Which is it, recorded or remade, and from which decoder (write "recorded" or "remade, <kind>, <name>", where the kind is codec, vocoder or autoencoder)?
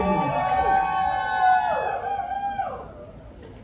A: recorded